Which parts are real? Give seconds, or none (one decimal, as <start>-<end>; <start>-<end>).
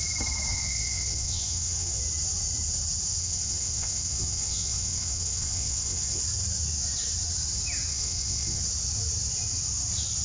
0.0-0.5; 2.0-3.2; 6.2-7.9; 8.6-10.2